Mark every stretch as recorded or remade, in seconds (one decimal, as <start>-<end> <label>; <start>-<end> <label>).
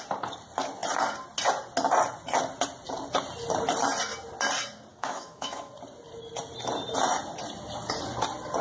0.0-4.9 recorded; 4.9-5.7 remade; 5.7-8.6 recorded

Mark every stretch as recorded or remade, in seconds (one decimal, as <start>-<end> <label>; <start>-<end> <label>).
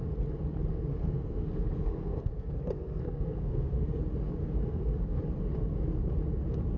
0.0-0.9 recorded; 0.9-4.0 remade; 4.0-4.4 recorded; 4.4-5.2 remade; 5.2-6.8 recorded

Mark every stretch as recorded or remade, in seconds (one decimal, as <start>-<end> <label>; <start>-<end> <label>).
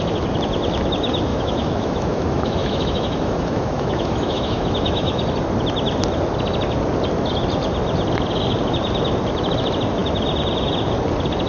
0.0-1.3 recorded; 1.3-5.2 remade; 5.2-11.5 recorded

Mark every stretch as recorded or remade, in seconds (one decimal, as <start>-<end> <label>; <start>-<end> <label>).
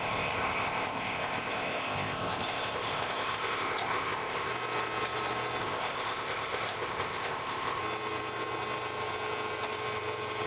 0.0-4.5 remade; 4.5-5.6 recorded; 5.6-7.8 remade; 7.8-10.5 recorded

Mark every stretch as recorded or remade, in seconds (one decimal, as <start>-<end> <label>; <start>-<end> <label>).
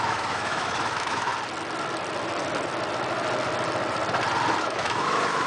0.0-1.3 remade; 1.3-4.6 recorded; 4.6-5.5 remade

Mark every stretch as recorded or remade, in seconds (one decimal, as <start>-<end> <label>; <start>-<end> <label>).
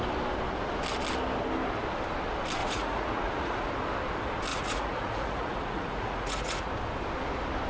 0.0-2.6 recorded; 2.6-3.7 remade; 3.7-4.5 recorded; 4.5-6.7 remade; 6.7-7.7 recorded